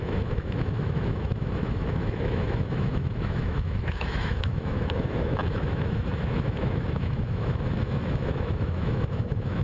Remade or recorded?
remade